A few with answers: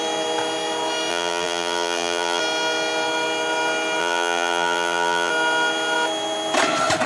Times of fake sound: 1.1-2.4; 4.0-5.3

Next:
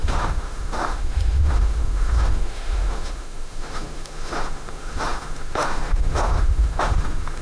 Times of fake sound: 0.0-7.4

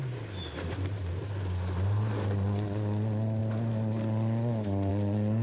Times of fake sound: 3.4-4.9

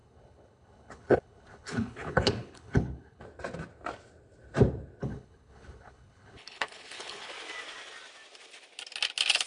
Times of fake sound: 0.0-3.2; 5.0-7.3